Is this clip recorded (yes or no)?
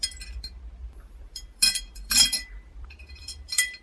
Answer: no